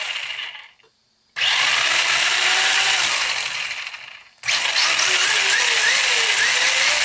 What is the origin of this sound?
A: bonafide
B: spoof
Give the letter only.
A